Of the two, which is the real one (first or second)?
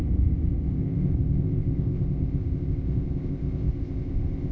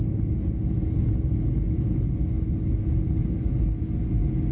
second